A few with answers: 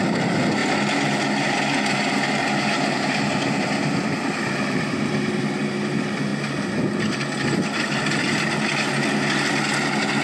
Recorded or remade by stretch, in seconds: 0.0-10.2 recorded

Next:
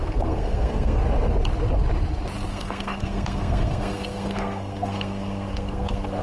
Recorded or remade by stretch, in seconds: 0.0-1.0 remade; 1.0-2.5 recorded; 2.5-6.2 remade

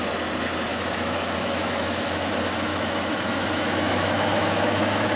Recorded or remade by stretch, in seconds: 0.0-0.7 recorded; 0.7-2.3 remade; 2.3-2.7 recorded; 2.7-5.2 remade

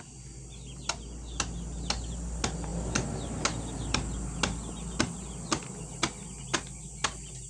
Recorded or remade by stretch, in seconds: 0.0-7.5 recorded

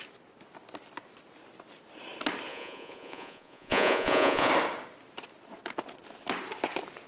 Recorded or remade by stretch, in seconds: 0.0-2.5 recorded; 2.5-4.5 remade; 4.5-7.1 recorded